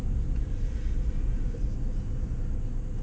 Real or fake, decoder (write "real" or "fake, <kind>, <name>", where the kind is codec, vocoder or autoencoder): real